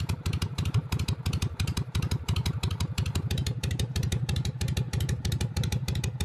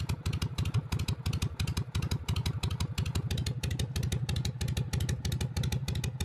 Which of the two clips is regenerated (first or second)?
first